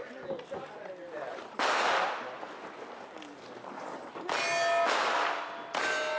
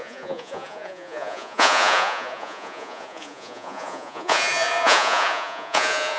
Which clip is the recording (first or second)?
first